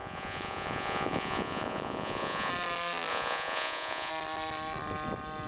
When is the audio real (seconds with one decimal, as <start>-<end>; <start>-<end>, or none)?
2.5-3.1; 4.1-5.5